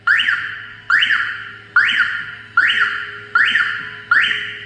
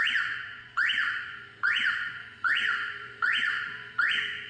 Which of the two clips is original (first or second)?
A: first